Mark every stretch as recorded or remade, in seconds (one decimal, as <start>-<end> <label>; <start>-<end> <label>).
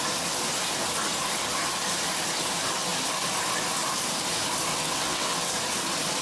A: 0.0-4.7 recorded; 4.7-5.5 remade; 5.5-6.2 recorded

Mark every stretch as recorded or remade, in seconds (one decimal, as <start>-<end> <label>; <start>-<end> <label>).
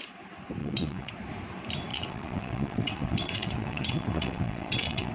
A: 0.0-0.6 recorded; 0.6-1.1 remade; 1.1-1.9 recorded; 1.9-5.1 remade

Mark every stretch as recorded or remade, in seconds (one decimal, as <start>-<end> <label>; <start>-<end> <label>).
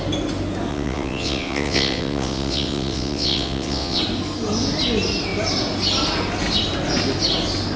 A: 0.0-0.7 recorded; 0.7-4.0 remade; 4.0-7.8 recorded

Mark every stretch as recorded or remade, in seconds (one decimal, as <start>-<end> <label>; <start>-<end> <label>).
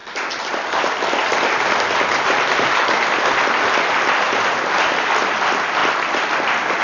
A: 0.0-6.8 recorded